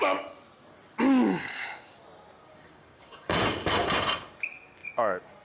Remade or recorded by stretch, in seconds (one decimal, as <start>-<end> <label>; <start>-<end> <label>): 0.0-2.4 recorded; 2.4-3.4 remade; 3.4-5.4 recorded